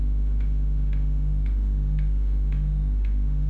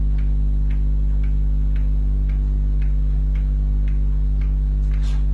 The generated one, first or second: first